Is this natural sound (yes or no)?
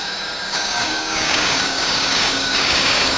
no